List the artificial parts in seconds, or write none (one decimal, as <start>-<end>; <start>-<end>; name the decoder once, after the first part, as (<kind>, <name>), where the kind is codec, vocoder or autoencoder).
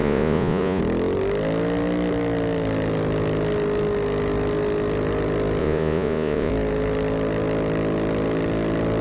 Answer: 0.0-0.8 (vocoder, Vocos); 5.6-6.5